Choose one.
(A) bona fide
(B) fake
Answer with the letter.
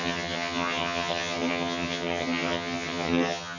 B